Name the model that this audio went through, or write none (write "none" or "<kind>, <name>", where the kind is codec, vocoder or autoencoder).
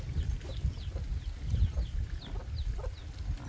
none